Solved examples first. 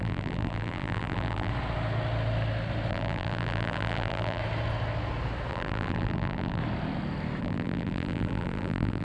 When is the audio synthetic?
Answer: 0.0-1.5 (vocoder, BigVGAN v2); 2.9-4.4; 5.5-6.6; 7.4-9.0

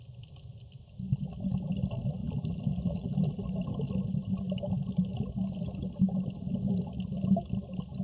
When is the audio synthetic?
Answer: 2.2-3.3 (vocoder, BigVGAN v2)

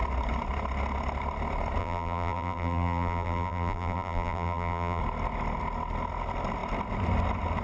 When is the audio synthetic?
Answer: 1.8-5.0 (vocoder, BigVGAN v2)